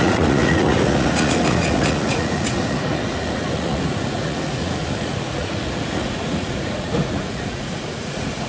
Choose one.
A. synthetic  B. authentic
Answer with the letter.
A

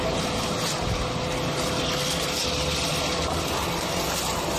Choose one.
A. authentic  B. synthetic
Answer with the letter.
A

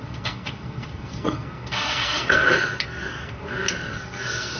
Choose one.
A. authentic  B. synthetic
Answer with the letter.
B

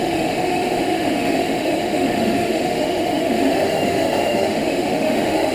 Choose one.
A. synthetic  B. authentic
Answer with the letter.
A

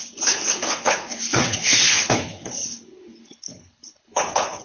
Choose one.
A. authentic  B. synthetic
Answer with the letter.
B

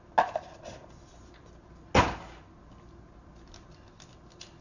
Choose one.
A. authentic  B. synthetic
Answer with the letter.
A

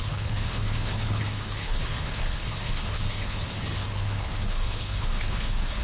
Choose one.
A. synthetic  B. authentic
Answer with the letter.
A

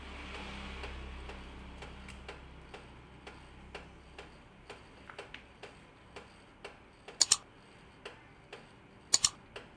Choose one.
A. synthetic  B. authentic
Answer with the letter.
B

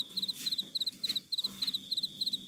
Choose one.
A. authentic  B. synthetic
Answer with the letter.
A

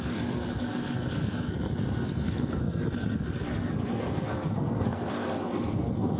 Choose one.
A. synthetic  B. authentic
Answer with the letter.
A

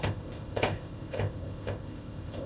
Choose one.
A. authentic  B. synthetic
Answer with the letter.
B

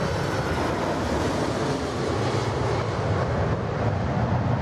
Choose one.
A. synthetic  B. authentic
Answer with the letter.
B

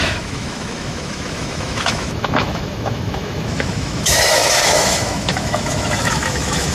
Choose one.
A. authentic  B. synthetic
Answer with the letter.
B